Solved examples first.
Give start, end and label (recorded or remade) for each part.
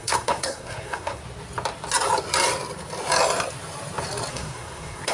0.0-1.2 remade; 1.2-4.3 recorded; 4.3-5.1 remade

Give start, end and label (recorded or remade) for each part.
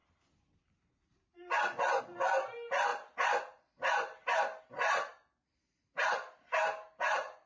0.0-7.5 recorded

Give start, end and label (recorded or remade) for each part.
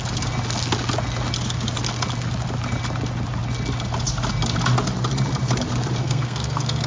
0.0-6.0 recorded; 6.0-6.9 remade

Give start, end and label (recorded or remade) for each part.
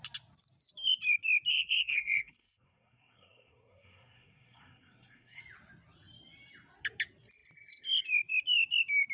0.0-1.5 recorded; 1.5-5.4 remade; 5.4-9.1 recorded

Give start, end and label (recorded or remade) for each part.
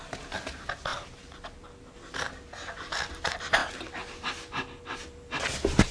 0.0-5.9 recorded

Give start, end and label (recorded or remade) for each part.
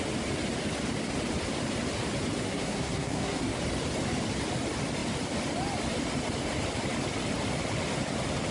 0.0-2.4 recorded; 2.4-3.6 remade; 3.6-8.5 recorded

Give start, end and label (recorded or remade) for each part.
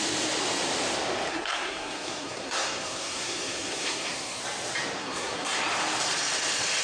0.0-1.3 recorded; 1.3-4.4 remade; 4.4-5.0 recorded; 5.0-5.6 remade; 5.6-6.8 recorded